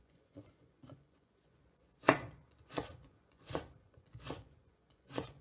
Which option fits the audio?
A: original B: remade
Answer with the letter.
B